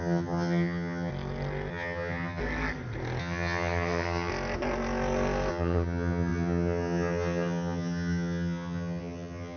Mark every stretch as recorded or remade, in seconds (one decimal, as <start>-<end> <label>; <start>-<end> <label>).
0.0-1.1 remade; 1.1-1.7 recorded; 1.7-2.4 remade; 2.4-3.2 recorded; 3.2-4.3 remade; 4.3-5.5 recorded; 5.5-9.6 remade